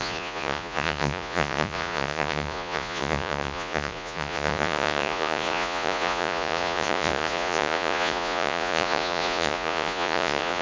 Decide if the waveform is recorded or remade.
remade